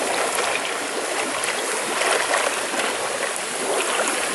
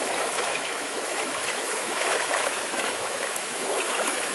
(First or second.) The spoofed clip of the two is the second